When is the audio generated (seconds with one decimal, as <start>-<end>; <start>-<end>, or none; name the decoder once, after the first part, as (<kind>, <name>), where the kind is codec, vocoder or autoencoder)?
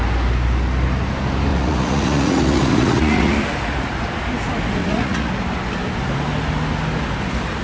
1.5-3.3 (vocoder, Vocos); 4.8-5.3